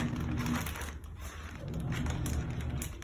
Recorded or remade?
recorded